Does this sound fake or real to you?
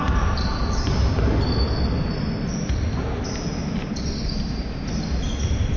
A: real